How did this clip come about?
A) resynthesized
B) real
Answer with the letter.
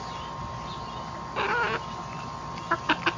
B